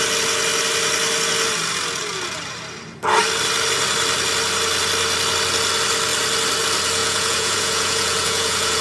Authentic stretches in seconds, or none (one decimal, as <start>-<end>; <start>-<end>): 0.0-7.0